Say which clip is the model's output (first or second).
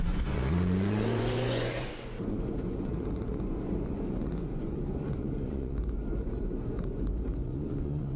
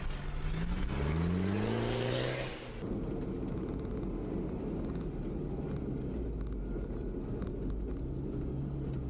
first